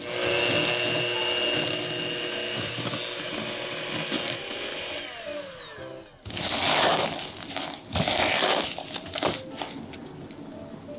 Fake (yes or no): no